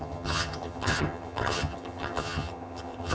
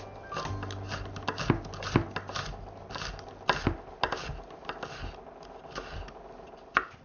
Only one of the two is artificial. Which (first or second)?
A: first